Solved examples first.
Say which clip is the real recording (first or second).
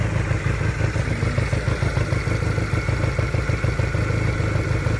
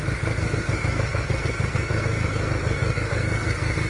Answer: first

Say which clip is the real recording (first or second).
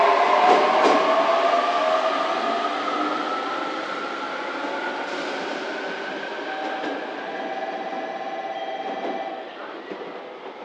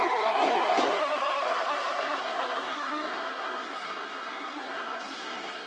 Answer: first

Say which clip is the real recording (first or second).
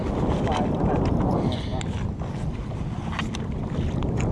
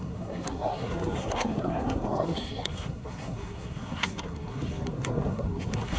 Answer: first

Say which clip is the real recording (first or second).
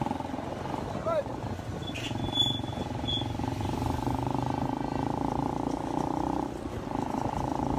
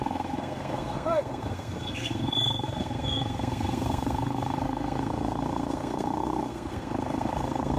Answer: first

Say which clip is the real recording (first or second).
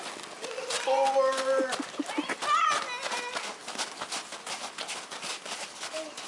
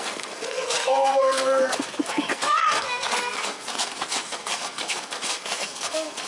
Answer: first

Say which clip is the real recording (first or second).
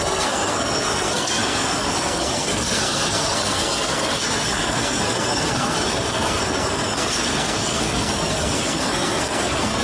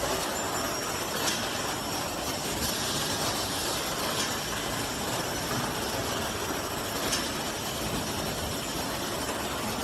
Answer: second